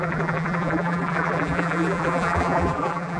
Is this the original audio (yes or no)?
no